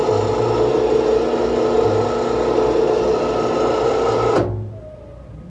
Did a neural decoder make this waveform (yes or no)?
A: no